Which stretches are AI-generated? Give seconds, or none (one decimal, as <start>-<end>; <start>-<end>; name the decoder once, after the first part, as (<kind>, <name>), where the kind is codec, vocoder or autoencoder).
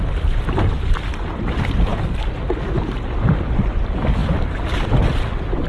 none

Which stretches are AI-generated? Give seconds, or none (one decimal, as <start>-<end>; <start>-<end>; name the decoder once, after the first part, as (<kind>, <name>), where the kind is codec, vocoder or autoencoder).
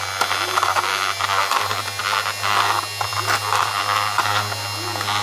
none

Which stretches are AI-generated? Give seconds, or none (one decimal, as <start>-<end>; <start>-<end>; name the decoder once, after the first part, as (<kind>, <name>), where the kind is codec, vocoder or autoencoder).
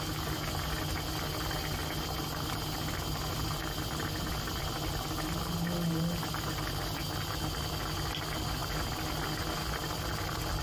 none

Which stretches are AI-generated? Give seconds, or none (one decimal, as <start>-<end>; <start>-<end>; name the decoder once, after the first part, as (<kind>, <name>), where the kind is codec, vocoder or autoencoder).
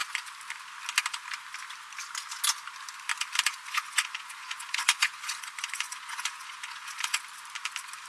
3.5-7.2 (vocoder, Vocos)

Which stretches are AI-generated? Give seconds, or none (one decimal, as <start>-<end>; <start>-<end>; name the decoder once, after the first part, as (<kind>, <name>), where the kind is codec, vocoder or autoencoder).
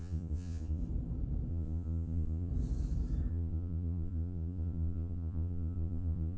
0.0-0.8 (vocoder, Vocos); 1.5-2.5; 3.3-6.4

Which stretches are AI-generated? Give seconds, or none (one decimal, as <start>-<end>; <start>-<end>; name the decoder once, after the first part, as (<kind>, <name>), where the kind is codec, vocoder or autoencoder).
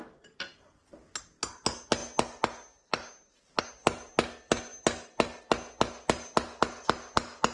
none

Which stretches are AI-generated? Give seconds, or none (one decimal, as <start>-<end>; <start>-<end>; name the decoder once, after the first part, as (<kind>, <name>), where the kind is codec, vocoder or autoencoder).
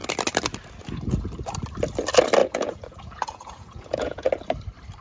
2.4-4.3 (vocoder, Vocos)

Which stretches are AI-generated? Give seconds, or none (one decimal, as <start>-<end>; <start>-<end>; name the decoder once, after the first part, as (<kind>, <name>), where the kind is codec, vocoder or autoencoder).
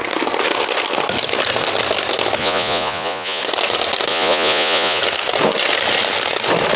2.4-3.4 (vocoder, Vocos); 4.1-5.0